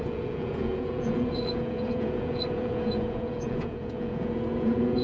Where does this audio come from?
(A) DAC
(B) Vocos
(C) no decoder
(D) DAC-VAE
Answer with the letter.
B